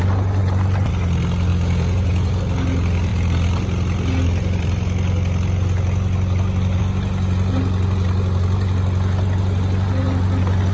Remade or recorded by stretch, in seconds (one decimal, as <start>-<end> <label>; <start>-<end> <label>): 0.0-1.5 recorded; 1.5-2.4 remade; 2.4-10.7 recorded